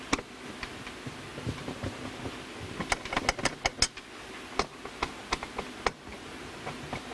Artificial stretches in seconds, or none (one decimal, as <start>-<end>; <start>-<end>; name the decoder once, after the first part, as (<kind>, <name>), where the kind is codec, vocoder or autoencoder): none